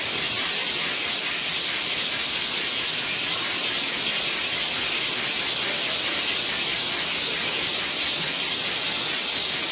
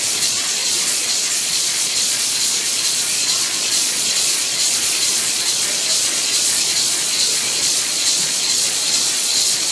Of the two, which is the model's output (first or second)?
second